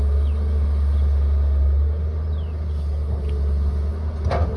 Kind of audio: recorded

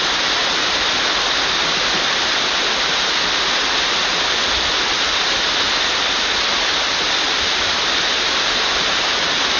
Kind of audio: recorded